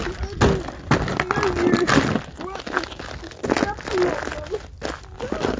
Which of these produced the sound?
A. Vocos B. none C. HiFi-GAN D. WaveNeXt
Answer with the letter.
B